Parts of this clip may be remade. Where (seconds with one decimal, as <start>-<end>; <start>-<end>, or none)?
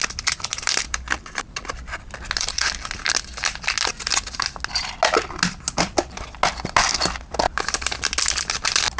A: none